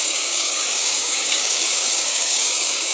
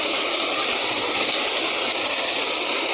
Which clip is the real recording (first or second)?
second